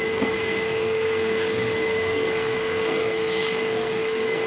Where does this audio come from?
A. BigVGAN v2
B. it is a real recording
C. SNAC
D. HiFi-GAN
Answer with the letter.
C